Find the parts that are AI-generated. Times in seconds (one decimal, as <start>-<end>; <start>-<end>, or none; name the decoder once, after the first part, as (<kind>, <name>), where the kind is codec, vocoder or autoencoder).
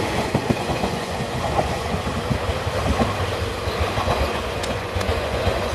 0.0-2.1 (vocoder, Vocos); 4.0-5.7